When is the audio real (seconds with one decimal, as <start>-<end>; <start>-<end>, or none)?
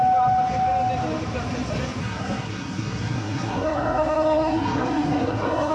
0.0-2.0